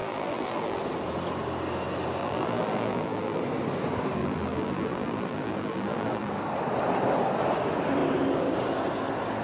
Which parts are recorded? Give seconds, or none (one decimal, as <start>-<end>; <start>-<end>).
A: 0.8-2.2; 3.4-4.2; 6.3-9.4